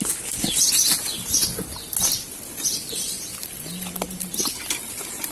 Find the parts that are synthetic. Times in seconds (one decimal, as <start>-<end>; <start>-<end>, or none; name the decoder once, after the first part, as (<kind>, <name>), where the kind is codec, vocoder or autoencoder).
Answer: none